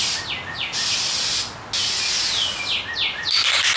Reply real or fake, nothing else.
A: real